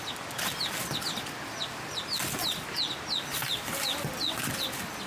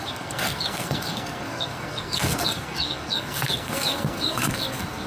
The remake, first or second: second